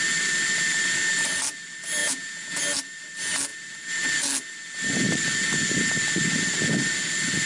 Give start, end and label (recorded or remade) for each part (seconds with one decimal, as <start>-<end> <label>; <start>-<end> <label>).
0.0-2.0 recorded; 2.0-2.6 remade; 2.6-7.5 recorded